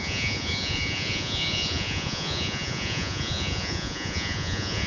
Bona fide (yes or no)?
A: no